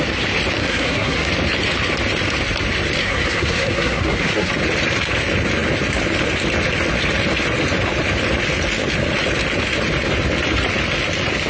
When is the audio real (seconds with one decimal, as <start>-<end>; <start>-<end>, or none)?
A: 0.0-0.6; 1.3-3.0; 4.5-11.5